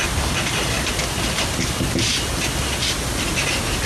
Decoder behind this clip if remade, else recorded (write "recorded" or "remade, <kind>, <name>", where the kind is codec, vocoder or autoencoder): recorded